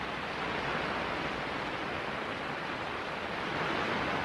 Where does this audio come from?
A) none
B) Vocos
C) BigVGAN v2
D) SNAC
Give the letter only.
A